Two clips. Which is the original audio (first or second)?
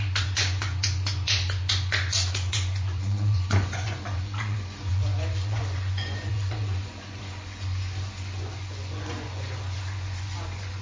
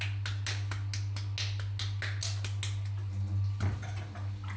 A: second